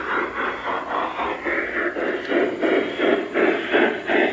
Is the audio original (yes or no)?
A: yes